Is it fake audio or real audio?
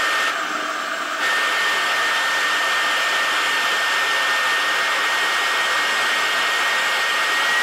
real